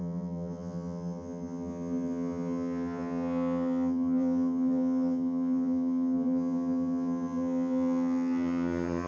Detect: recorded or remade remade